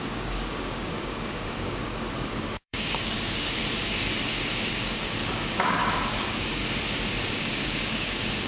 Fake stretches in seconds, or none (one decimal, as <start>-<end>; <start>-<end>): 0.0-1.9; 2.5-3.6; 4.7-6.6; 7.3-8.5